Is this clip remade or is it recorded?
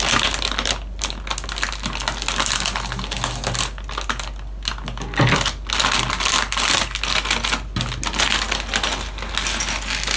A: recorded